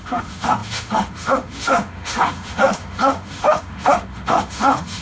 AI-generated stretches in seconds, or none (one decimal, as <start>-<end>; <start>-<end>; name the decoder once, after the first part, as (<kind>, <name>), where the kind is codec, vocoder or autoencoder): 0.0-5.0 (autoencoder, DAC-VAE)